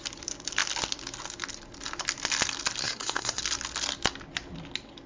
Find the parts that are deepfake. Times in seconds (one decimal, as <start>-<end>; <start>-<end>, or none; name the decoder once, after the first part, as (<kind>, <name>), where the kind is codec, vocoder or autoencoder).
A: 2.8-3.4 (codec, SNAC)